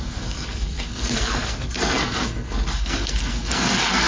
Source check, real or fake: fake